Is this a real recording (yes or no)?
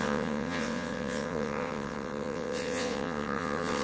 no